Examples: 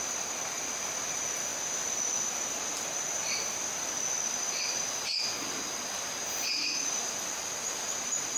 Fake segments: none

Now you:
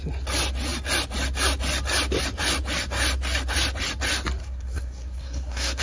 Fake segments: 4.4-5.8 (codec, SNAC)